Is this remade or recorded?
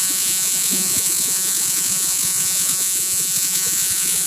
remade